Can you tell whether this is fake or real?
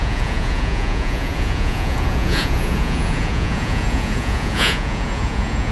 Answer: fake